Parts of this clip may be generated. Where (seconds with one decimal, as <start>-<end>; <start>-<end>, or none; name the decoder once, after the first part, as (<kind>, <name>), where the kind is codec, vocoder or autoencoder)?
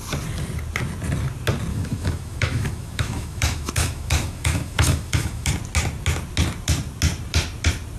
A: 1.7-5.5 (autoencoder, DAC-VAE)